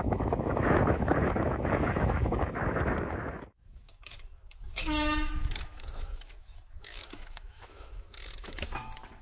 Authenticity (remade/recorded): remade